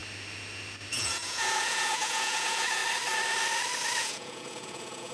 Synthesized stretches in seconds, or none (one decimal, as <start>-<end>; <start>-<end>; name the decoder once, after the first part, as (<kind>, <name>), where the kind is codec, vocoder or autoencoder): 0.9-2.8 (vocoder, Vocos); 4.0-5.1